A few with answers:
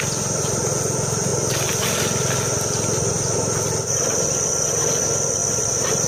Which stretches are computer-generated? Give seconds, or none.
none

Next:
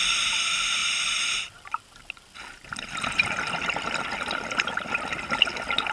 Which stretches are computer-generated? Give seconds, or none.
none